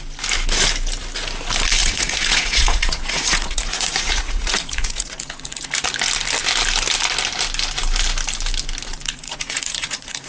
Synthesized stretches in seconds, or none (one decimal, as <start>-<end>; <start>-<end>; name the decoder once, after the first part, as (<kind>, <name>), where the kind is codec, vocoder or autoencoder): 1.8-5.7 (vocoder, Vocos); 8.9-10.3